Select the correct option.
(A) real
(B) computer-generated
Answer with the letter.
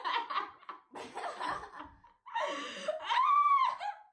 B